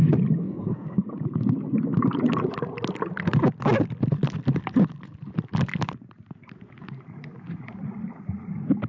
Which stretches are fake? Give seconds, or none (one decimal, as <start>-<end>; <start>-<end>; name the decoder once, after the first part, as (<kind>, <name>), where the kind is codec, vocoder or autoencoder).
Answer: 0.4-1.0 (codec, SNAC)